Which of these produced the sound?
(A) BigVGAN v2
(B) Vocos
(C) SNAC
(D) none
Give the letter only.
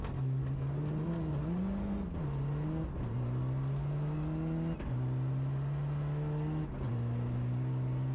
D